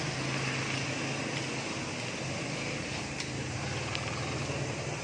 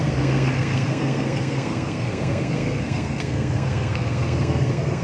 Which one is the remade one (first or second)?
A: second